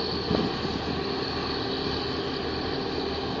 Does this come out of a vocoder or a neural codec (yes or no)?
no